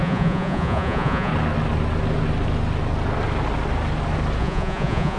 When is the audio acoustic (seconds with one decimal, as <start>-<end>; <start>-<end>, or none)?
1.3-4.4